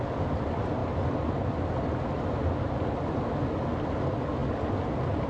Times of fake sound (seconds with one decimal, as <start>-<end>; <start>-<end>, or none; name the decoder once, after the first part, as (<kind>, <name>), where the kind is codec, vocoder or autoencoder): none